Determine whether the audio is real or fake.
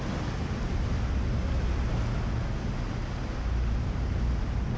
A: real